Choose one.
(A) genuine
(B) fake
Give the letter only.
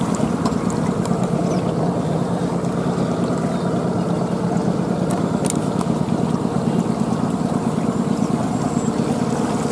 A